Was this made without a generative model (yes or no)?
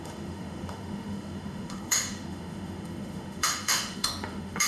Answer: no